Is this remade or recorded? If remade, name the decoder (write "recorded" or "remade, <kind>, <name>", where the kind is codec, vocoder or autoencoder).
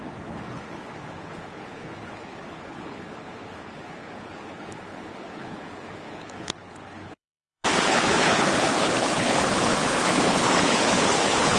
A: remade, codec, HILCodec